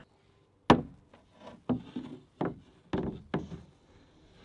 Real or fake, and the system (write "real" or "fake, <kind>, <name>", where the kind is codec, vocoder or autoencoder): real